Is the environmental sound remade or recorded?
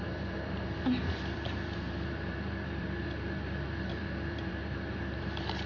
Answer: remade